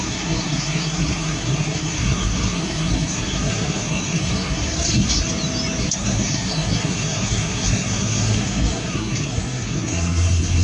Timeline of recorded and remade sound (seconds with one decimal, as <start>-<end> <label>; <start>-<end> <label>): 0.0-5.2 remade; 5.2-5.8 recorded; 5.8-10.6 remade